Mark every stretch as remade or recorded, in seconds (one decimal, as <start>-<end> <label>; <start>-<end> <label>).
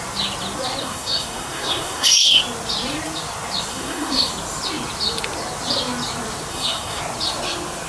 0.0-0.8 recorded; 0.8-2.4 remade; 2.4-3.7 recorded; 3.7-4.3 remade; 4.3-6.5 recorded; 6.5-7.0 remade; 7.0-7.9 recorded